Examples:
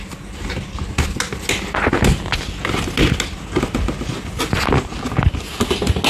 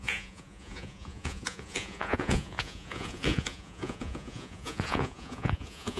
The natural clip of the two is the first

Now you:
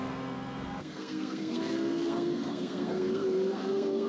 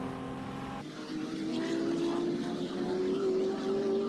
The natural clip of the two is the second